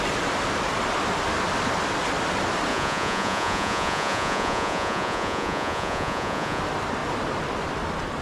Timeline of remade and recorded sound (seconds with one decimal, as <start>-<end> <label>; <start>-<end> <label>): 0.0-2.7 recorded; 2.7-6.6 remade; 6.6-8.2 recorded